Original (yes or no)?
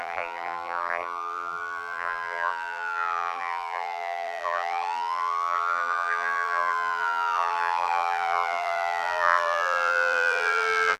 no